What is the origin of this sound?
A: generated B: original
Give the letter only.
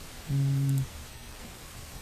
A